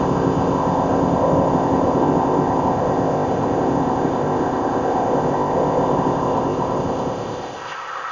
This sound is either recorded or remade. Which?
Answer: remade